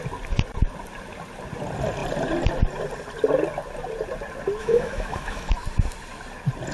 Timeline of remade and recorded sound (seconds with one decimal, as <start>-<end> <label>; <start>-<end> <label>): 0.0-4.6 recorded; 4.6-5.5 remade; 5.5-6.7 recorded